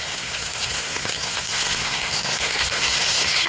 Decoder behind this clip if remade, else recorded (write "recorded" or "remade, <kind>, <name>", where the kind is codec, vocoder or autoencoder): remade, codec, SNAC